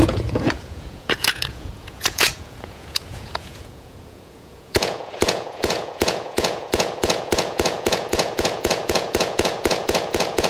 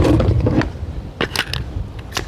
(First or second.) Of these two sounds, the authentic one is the second